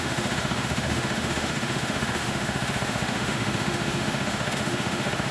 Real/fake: fake